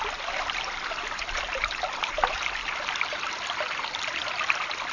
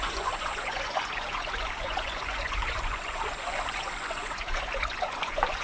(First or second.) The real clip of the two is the first